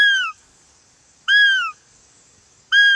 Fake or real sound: fake